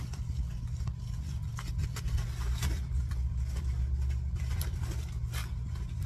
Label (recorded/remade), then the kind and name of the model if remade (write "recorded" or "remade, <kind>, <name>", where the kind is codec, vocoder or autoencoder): recorded